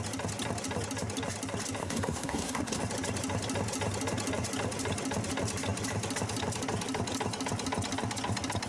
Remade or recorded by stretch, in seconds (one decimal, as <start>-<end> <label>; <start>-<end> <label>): 0.0-1.8 recorded; 1.8-2.8 remade; 2.8-8.7 recorded